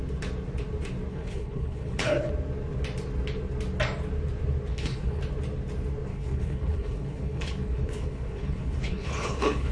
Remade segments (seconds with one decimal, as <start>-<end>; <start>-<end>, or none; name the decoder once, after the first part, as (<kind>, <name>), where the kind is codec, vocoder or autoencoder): 1.1-2.3 (codec, HILCodec); 4.7-5.2; 6.1-9.7